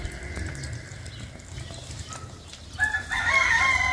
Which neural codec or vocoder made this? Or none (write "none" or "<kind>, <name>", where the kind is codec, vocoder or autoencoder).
none